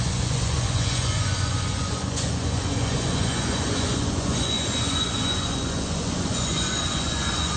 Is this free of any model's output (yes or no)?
no